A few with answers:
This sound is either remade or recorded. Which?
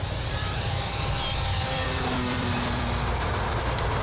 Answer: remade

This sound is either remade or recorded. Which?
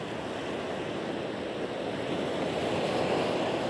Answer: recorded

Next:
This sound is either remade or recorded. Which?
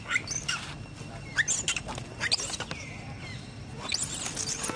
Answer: recorded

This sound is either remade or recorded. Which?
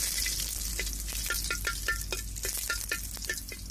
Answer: recorded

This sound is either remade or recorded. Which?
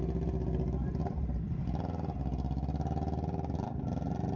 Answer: recorded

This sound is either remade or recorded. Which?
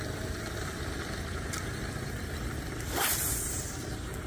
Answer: remade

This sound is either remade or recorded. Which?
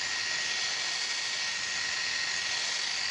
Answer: recorded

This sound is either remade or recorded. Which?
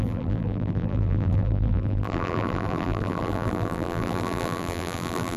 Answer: remade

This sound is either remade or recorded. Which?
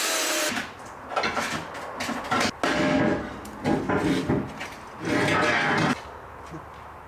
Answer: recorded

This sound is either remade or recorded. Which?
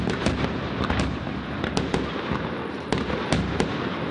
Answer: recorded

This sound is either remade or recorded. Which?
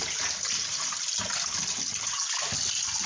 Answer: recorded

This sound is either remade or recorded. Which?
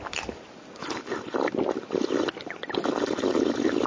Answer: remade